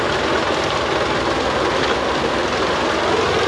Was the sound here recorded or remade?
recorded